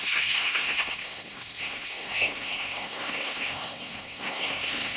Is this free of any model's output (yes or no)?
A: no